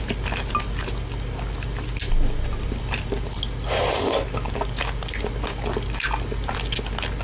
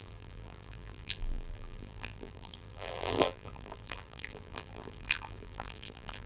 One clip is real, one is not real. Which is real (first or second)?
first